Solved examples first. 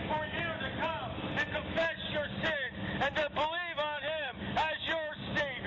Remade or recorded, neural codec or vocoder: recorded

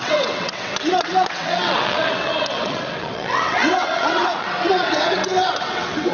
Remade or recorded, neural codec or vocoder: remade, vocoder, WaveNeXt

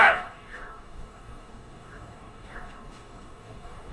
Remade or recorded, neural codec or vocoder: remade, codec, DAC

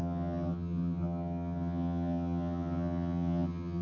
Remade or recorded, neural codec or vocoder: remade, vocoder, HiFi-GAN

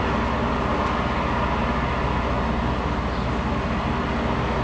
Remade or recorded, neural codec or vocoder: recorded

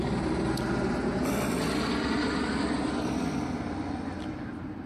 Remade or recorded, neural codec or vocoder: recorded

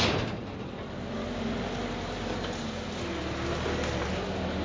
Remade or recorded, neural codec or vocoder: recorded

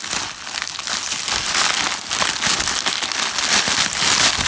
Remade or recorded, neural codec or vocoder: recorded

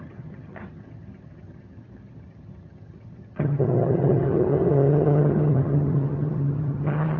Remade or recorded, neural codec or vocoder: remade, vocoder, HiFi-GAN